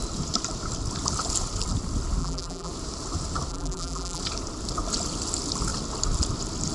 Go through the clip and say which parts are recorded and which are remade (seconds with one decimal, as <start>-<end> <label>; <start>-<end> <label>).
0.0-2.2 recorded; 2.2-2.7 remade; 2.7-3.5 recorded; 3.5-4.2 remade; 4.2-6.7 recorded

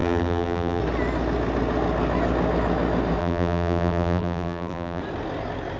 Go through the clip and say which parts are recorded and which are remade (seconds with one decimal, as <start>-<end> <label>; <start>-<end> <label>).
0.0-0.8 remade; 0.8-3.2 recorded; 3.2-5.0 remade; 5.0-5.8 recorded

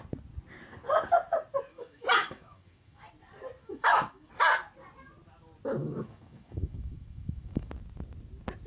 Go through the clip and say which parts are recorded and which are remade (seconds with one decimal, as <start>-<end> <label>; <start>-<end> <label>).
0.0-1.7 recorded; 1.7-3.1 remade; 3.1-3.6 recorded; 3.6-4.3 remade; 4.3-5.8 recorded; 5.8-7.7 remade; 7.7-8.7 recorded

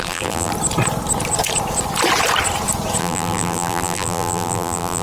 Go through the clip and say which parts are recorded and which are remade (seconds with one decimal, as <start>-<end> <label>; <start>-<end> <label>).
0.0-0.5 remade; 0.5-3.0 recorded; 3.0-5.0 remade

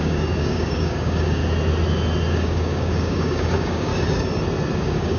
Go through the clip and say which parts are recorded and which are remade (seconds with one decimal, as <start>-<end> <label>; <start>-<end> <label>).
0.0-1.4 remade; 1.4-2.3 recorded; 2.3-3.9 remade; 3.9-4.8 recorded; 4.8-5.2 remade